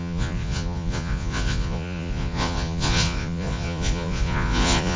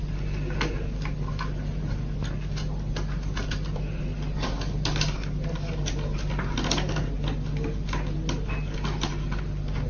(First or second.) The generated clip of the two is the first